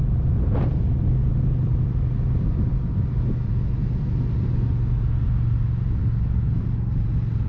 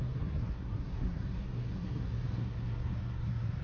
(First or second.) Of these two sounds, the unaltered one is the first